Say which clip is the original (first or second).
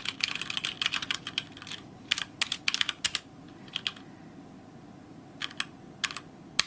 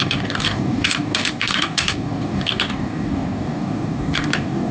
first